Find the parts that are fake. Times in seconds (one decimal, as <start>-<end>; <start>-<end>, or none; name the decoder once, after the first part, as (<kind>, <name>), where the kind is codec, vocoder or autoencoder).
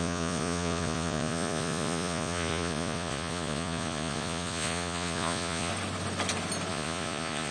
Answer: 0.0-5.7 (vocoder, Vocos); 6.7-7.5